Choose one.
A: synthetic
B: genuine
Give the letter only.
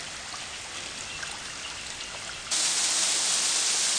B